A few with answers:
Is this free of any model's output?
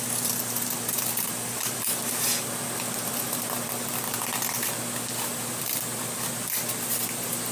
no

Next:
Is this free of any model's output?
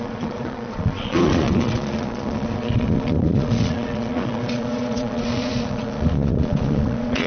no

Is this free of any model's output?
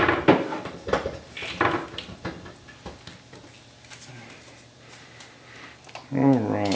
yes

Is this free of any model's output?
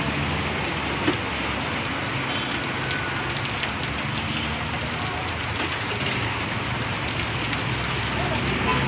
yes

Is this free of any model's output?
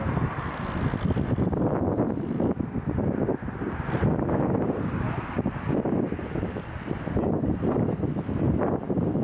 yes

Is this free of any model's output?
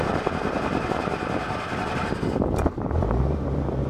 yes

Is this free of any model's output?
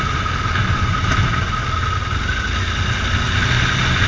yes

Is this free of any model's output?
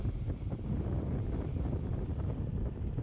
yes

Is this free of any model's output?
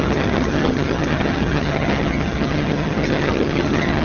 no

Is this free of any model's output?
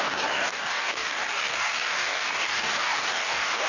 no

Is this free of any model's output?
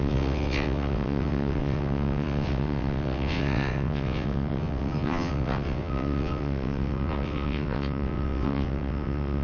no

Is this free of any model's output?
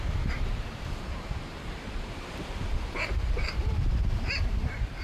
no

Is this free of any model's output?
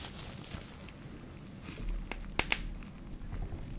yes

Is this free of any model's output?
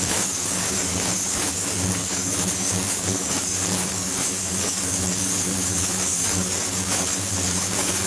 no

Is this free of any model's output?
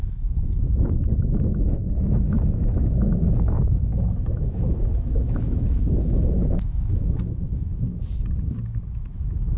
no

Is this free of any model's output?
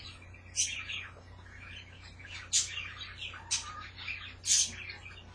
yes